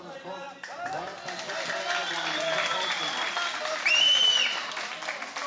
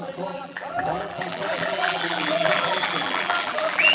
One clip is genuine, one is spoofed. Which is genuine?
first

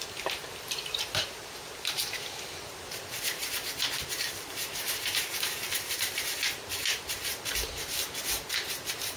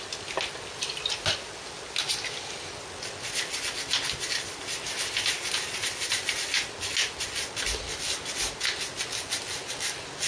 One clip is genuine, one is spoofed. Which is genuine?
second